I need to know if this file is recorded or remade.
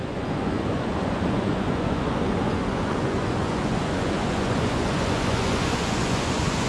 remade